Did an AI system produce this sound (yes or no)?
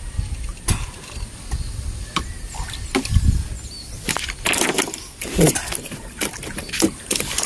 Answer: no